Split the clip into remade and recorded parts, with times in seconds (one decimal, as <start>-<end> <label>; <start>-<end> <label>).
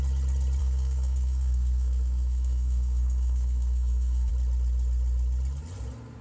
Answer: 0.0-0.6 recorded; 0.6-4.3 remade; 4.3-6.2 recorded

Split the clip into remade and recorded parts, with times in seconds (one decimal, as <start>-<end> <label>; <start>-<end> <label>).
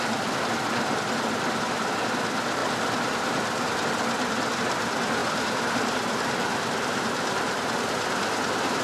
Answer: 0.0-8.8 recorded